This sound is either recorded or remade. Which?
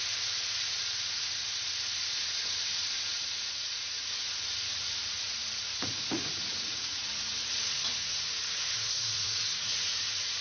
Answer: remade